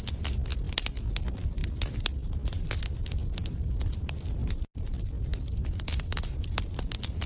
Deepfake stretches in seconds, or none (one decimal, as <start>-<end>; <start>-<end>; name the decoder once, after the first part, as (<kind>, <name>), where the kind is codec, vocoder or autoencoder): none